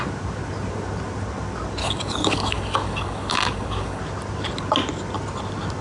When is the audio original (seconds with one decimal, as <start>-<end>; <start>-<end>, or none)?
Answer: 0.0-1.8; 4.0-5.8